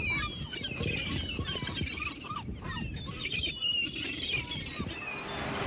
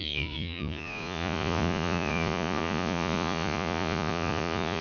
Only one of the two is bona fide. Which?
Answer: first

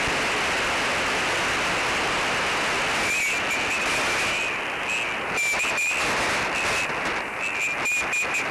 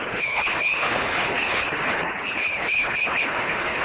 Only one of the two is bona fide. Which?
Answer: first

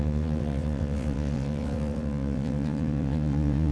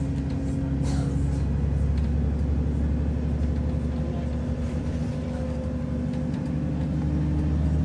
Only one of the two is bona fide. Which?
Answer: second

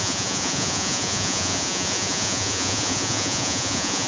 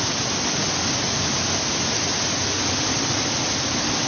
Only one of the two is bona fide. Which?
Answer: second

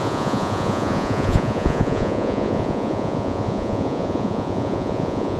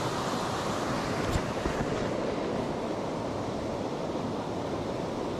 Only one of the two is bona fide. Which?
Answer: second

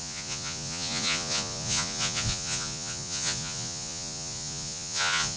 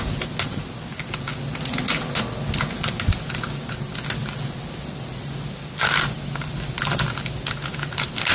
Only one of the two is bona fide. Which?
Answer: second